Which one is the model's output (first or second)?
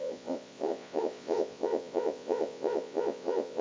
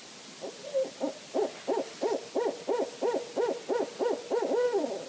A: first